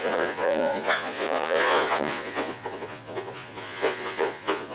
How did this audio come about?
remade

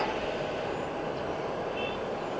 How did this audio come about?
recorded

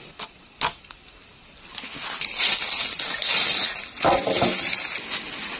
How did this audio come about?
recorded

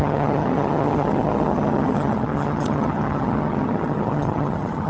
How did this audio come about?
remade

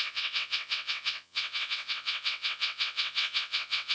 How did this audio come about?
remade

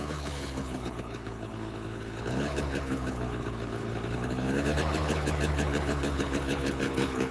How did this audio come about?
remade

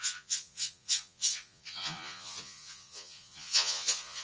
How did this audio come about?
remade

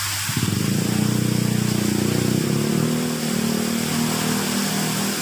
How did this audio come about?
recorded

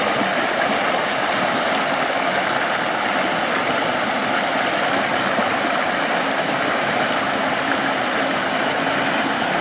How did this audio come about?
recorded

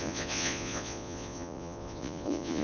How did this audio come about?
remade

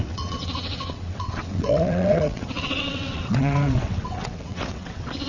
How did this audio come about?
remade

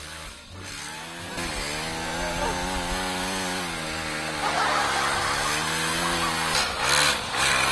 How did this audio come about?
recorded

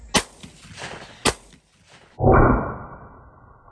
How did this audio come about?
recorded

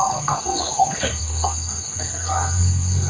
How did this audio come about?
remade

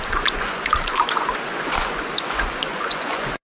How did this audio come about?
remade